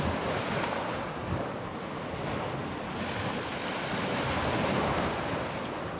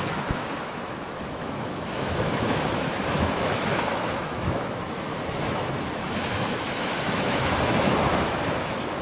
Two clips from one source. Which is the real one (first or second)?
first